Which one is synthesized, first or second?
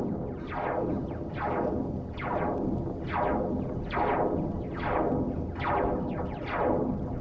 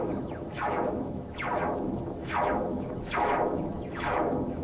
second